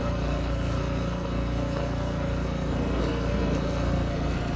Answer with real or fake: fake